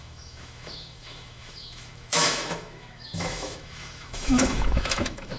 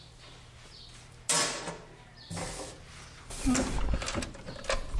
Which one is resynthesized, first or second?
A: first